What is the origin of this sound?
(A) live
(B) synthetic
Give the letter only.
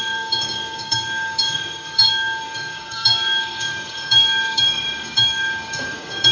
B